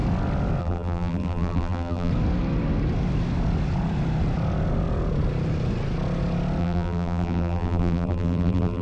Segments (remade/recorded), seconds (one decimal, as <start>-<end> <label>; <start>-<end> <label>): 0.0-0.6 recorded; 0.6-2.1 remade; 2.1-6.6 recorded; 6.6-8.8 remade